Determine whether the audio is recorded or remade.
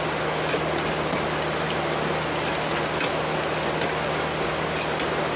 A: recorded